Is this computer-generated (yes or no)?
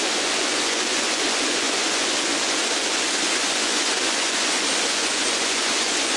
yes